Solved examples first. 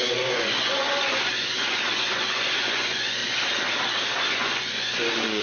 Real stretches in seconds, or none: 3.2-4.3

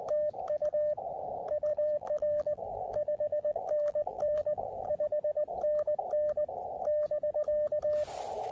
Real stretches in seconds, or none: 0.0-1.7; 4.9-8.5